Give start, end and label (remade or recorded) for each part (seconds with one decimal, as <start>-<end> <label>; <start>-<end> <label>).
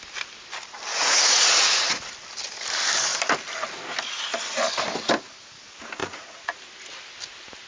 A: 0.0-0.9 recorded; 0.9-2.1 remade; 2.1-6.0 recorded; 6.0-6.6 remade; 6.6-7.7 recorded